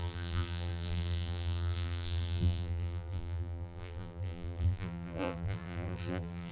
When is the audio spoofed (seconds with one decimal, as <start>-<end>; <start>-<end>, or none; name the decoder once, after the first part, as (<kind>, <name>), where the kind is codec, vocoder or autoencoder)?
0.0-6.5 (vocoder, BigVGAN v2)